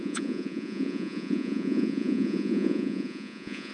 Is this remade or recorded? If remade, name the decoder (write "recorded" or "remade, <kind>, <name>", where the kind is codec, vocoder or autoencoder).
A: remade, vocoder, Vocos